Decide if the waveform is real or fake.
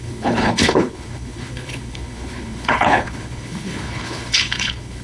fake